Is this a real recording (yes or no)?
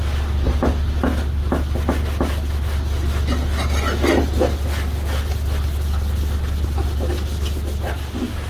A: yes